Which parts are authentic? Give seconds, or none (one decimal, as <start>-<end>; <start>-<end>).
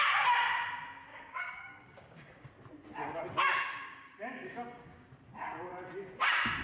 0.0-1.1; 2.5-3.7; 5.1-6.6